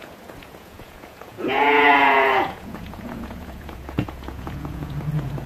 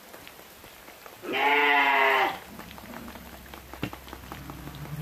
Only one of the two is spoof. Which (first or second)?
first